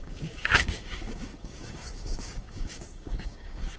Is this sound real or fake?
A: fake